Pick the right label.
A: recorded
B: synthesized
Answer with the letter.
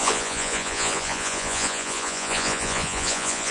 B